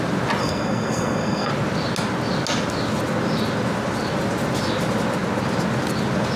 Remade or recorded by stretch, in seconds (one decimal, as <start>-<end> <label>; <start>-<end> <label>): 0.0-0.4 recorded; 0.4-1.5 remade; 1.5-6.4 recorded